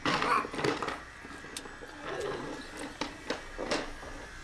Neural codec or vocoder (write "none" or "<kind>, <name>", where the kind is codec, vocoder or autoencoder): none